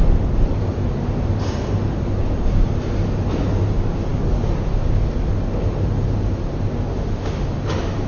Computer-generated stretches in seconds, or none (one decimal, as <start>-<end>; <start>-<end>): 6.9-7.4